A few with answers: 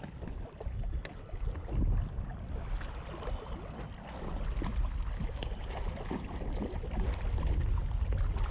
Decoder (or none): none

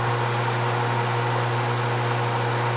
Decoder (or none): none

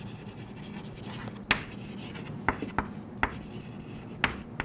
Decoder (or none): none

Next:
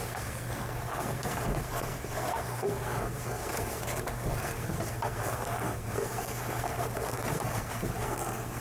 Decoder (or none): codec, SNAC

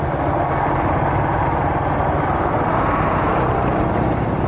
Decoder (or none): none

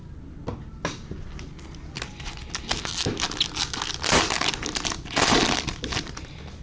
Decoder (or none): none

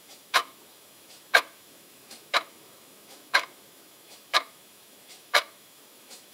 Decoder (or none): autoencoder, DAC-VAE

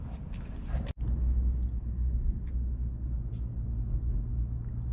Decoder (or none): none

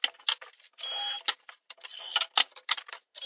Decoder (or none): none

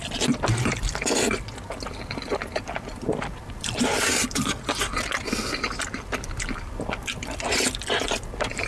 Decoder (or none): none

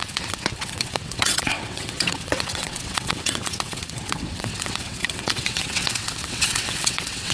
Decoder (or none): vocoder, WaveNeXt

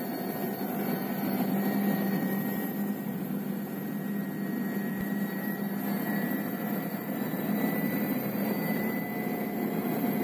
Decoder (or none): vocoder, BigVGAN v2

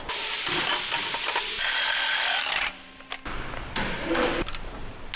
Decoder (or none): none